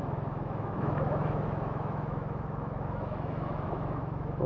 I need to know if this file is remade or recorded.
remade